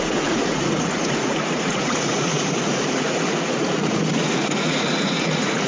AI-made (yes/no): yes